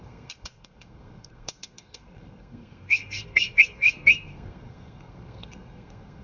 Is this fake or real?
fake